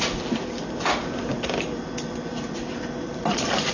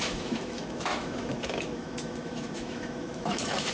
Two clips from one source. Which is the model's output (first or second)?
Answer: second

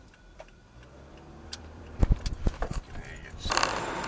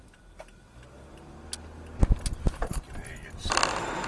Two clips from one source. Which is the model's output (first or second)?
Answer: first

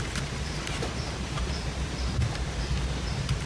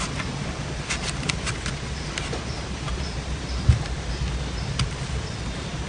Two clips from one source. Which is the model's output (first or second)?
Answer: first